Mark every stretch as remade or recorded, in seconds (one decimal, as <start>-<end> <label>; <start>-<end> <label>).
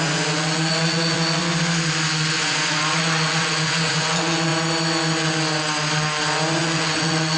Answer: 0.0-1.4 remade; 1.4-2.3 recorded; 2.3-4.5 remade; 4.5-6.6 recorded; 6.6-7.4 remade